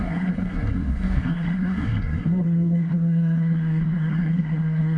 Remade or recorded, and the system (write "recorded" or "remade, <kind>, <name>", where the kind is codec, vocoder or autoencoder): remade, codec, SNAC